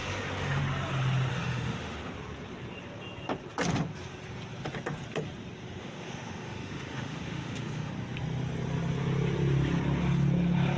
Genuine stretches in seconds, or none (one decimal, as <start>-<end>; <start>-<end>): 0.6-1.3; 2.1-5.8; 7.9-10.8